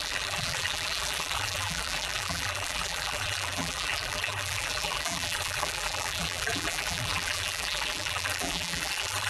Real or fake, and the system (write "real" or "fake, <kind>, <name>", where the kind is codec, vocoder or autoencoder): fake, vocoder, BigVGAN v2